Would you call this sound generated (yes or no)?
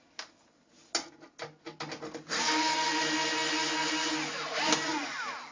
no